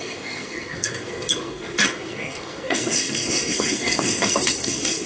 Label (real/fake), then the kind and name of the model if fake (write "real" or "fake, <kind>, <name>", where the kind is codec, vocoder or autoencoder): fake, codec, SNAC